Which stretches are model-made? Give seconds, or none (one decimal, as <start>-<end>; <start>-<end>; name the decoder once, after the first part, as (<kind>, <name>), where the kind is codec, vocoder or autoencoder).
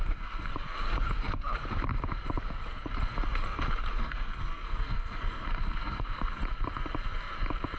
0.0-0.5 (codec, SNAC); 4.0-6.4